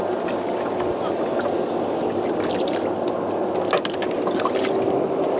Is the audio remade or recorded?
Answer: recorded